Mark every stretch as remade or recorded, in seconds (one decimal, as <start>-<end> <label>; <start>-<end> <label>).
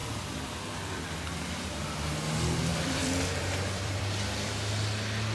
0.0-1.0 remade; 1.0-2.7 recorded; 2.7-4.0 remade; 4.0-5.3 recorded